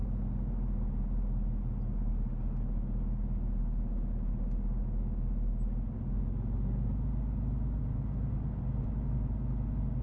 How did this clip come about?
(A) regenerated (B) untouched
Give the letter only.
B